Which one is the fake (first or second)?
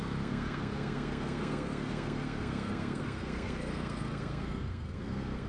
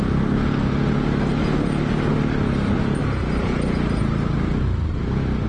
first